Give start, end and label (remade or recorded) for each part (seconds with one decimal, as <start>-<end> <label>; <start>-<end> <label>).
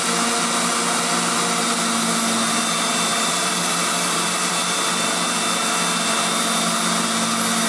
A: 0.0-3.1 recorded; 3.1-4.5 remade; 4.5-7.7 recorded